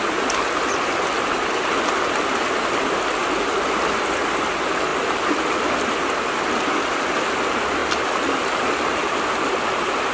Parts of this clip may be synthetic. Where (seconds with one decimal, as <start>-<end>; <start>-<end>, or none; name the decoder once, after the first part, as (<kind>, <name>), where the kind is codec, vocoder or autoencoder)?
3.2-4.0 (vocoder, BigVGAN v2); 4.9-5.6; 7.8-9.2